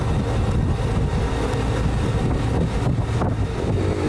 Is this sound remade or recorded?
recorded